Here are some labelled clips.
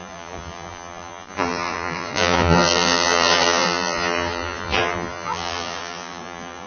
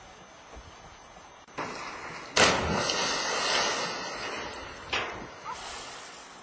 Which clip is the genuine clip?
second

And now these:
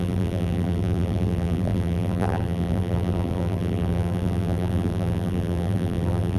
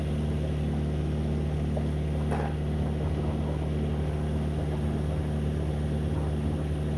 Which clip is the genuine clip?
second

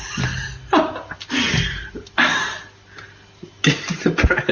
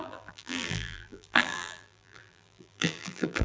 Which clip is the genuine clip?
first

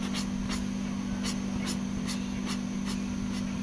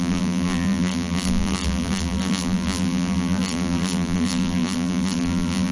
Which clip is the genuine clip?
first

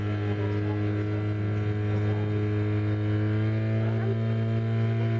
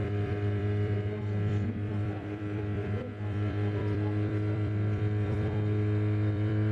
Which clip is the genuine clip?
first